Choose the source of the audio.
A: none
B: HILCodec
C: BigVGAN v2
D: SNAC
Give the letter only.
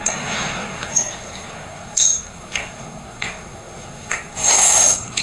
D